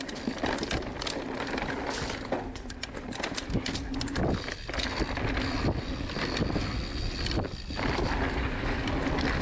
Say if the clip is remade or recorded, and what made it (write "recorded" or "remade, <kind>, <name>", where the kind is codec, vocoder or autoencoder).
recorded